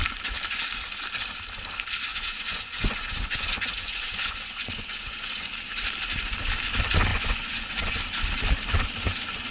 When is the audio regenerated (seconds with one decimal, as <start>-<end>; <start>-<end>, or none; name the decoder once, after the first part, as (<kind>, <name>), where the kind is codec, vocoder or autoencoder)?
2.1-5.5 (vocoder, Vocos); 7.1-7.9